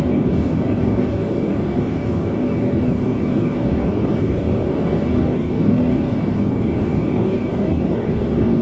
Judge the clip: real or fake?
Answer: fake